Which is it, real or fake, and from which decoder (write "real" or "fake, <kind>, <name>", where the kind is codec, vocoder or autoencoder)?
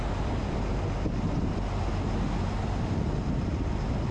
real